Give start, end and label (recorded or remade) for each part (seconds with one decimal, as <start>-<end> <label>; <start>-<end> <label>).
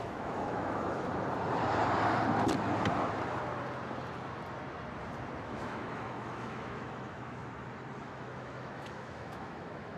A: 0.0-1.1 remade; 1.1-5.4 recorded; 5.4-7.4 remade; 7.4-8.0 recorded; 8.0-10.0 remade